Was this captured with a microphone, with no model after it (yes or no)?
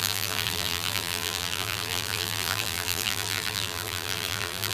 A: no